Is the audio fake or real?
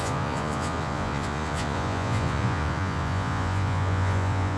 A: fake